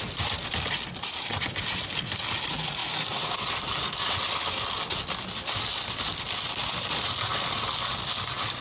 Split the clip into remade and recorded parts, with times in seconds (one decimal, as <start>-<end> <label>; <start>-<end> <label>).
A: 0.0-8.6 recorded